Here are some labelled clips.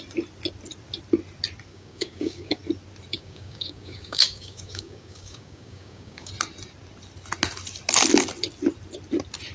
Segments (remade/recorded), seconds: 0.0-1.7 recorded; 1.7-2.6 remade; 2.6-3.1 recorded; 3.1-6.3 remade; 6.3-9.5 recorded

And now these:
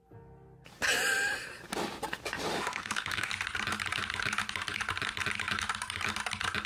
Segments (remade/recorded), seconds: 0.0-2.5 recorded; 2.5-3.3 remade; 3.3-6.7 recorded

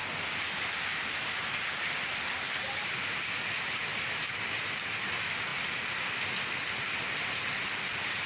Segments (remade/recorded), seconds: 0.0-8.3 recorded

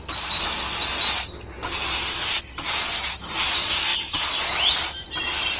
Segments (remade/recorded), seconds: 0.0-3.9 recorded; 3.9-4.4 remade; 4.4-5.6 recorded

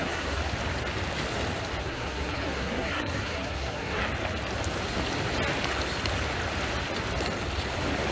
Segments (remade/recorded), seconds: 0.0-0.4 remade; 0.4-1.8 recorded; 1.8-4.0 remade; 4.0-8.1 recorded

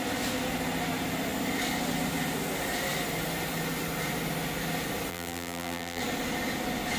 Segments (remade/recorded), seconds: 0.0-5.1 recorded; 5.1-6.0 remade; 6.0-7.0 recorded